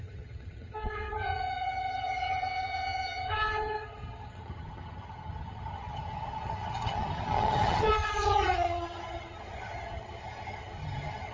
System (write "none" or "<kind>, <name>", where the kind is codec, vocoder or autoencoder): vocoder, HiFi-GAN